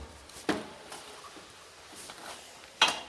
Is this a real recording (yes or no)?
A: yes